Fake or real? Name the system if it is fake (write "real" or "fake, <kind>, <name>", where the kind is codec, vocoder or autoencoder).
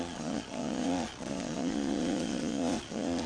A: fake, vocoder, Vocos